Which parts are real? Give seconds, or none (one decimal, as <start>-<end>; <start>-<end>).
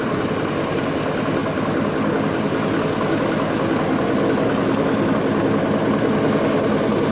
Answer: 0.0-7.1